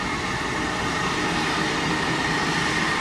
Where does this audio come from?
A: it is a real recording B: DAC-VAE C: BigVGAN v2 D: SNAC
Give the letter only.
A